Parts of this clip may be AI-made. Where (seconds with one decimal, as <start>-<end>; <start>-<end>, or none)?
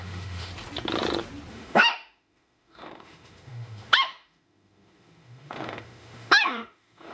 0.0-0.5; 1.5-7.1